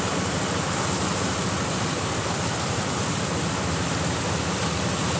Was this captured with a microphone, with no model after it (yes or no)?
yes